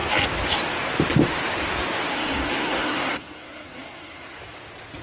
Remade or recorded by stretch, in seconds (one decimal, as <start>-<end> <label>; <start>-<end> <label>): 0.0-2.1 recorded; 2.1-4.4 remade; 4.4-5.0 recorded

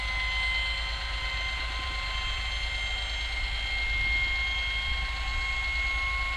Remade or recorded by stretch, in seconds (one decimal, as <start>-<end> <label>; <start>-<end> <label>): 0.0-1.1 recorded; 1.1-2.5 remade; 2.5-6.4 recorded

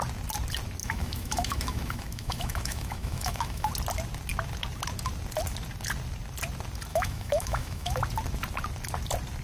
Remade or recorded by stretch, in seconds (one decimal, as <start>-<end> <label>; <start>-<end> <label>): 0.0-0.8 recorded; 0.8-3.7 remade; 3.7-6.9 recorded; 6.9-8.0 remade; 8.0-9.4 recorded

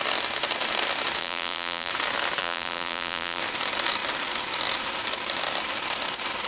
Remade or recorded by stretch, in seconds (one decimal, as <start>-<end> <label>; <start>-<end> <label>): 0.0-1.2 recorded; 1.2-1.9 remade; 1.9-2.4 recorded; 2.4-3.4 remade; 3.4-6.5 recorded